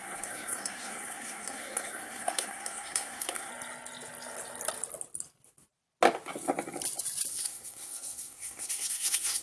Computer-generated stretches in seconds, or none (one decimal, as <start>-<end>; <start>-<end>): 0.0-3.5; 7.3-9.4

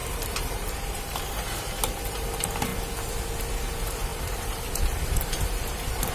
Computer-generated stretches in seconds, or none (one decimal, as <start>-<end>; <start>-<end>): 0.0-2.3; 4.1-6.1